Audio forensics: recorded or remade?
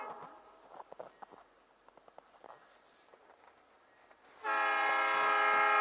recorded